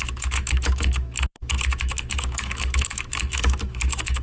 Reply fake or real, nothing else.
fake